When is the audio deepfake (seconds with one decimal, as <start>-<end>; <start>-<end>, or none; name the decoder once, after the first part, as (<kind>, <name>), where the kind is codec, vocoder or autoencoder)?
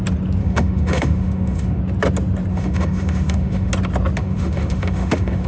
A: 0.4-1.8 (autoencoder, DAC-VAE); 2.5-3.7; 4.2-5.5